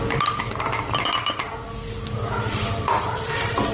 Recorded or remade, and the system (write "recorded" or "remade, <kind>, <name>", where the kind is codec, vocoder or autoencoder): recorded